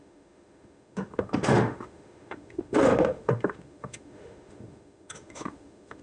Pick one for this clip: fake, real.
fake